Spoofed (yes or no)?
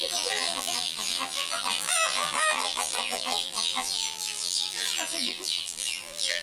yes